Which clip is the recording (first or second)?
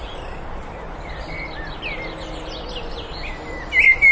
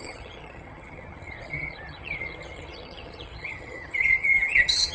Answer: first